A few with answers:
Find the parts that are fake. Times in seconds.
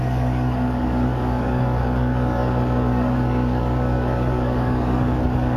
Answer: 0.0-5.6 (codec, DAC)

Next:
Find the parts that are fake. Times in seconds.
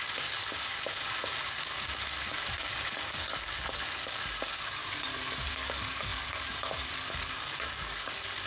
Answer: 0.0-4.8 (codec, DAC); 5.5-8.5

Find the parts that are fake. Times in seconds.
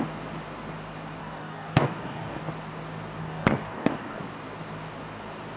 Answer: 1.2-2.4 (codec, DAC); 3.2-4.2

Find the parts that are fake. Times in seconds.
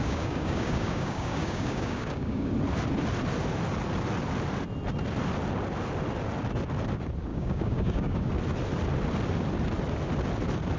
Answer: 0.0-2.5 (codec, DAC); 7.3-8.3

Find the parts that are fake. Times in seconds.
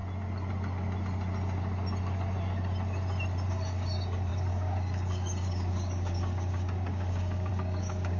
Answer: 3.5-8.2 (codec, DAC)